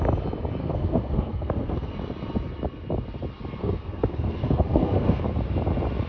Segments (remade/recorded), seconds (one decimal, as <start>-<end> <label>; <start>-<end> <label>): 0.0-0.6 recorded; 0.6-1.9 remade; 1.9-3.6 recorded; 3.6-5.2 remade; 5.2-6.1 recorded